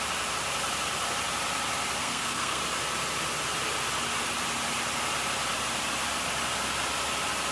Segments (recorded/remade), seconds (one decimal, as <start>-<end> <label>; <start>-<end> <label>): 0.0-2.0 recorded; 2.0-2.6 remade; 2.6-7.5 recorded